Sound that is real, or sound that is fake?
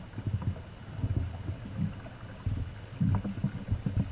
real